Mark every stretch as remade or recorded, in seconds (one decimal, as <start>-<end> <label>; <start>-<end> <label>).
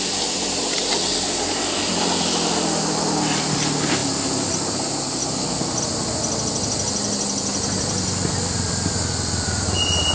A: 0.0-10.1 recorded